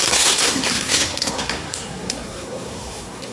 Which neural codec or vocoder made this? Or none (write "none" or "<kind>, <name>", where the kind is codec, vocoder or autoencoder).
codec, SNAC